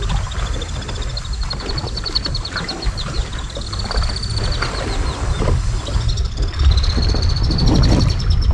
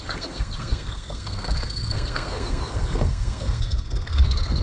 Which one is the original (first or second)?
first